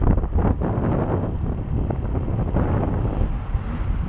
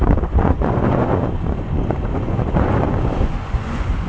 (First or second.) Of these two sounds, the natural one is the first